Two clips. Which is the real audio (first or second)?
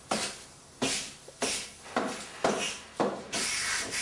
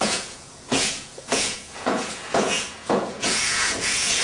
first